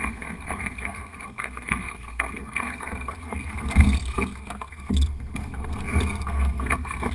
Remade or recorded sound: remade